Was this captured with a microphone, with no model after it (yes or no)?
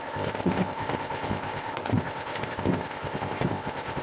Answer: no